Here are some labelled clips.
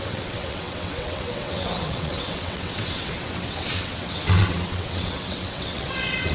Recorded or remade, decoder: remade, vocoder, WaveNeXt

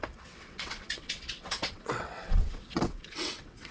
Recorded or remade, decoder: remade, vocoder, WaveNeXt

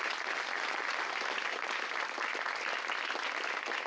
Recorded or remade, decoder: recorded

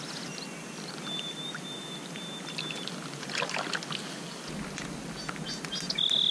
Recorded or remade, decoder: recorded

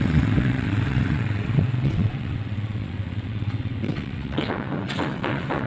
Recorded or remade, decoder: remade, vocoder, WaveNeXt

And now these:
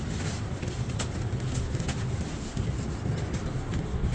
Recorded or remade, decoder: recorded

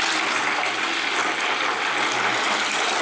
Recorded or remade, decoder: recorded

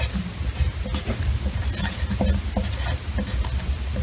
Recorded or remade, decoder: recorded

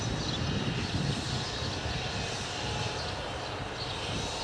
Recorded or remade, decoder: recorded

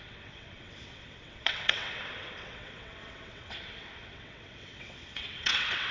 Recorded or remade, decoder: remade, vocoder, WaveNeXt